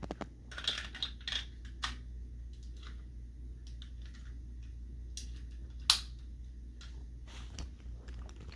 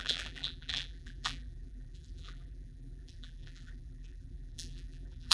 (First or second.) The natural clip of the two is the first